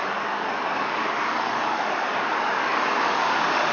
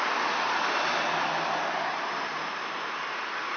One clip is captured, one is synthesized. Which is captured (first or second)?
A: second